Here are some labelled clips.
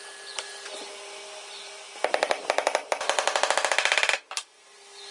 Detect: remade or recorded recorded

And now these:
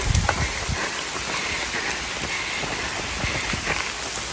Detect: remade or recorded recorded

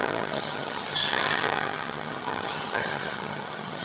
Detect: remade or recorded remade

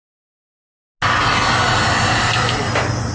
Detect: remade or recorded recorded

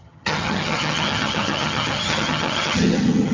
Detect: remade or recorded remade